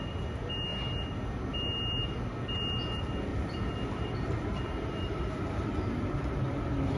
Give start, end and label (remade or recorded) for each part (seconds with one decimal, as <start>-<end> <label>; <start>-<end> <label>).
0.0-3.3 recorded; 3.3-6.6 remade; 6.6-7.0 recorded

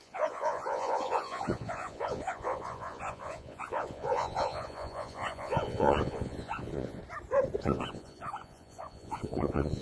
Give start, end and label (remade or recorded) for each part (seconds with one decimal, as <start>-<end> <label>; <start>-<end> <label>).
0.0-7.0 remade; 7.0-7.6 recorded; 7.6-9.8 remade

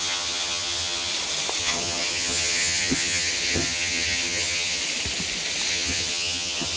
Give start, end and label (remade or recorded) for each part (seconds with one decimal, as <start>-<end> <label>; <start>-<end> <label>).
0.0-1.1 remade; 1.1-1.6 recorded; 1.6-4.8 remade; 4.8-5.7 recorded; 5.7-6.8 remade

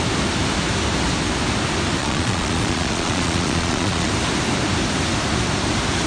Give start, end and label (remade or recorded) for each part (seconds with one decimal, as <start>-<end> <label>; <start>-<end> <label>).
0.0-2.0 recorded; 2.0-4.1 remade; 4.1-6.1 recorded

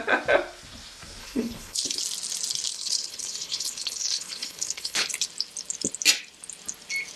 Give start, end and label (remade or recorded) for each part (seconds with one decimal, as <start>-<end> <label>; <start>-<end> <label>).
0.0-1.2 recorded; 1.2-2.0 remade; 2.0-2.7 recorded; 2.7-5.1 remade; 5.1-7.2 recorded

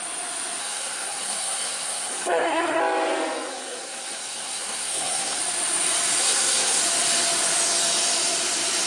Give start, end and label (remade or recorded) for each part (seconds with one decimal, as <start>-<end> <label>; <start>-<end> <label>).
0.0-0.6 recorded; 0.6-2.8 remade; 2.8-3.5 recorded; 3.5-5.4 remade; 5.4-6.2 recorded; 6.2-6.8 remade; 6.8-8.9 recorded

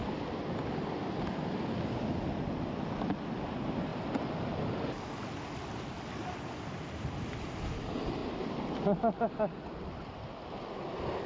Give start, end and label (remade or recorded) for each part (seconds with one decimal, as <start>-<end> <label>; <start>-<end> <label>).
0.0-8.2 recorded; 8.2-10.5 remade; 10.5-11.3 recorded